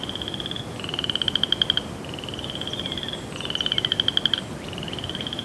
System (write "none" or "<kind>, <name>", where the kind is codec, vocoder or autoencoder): none